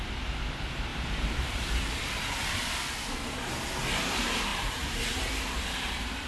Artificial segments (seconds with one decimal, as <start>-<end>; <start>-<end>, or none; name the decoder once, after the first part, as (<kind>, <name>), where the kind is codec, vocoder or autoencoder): 0.9-2.6 (vocoder, BigVGAN v2); 4.5-5.3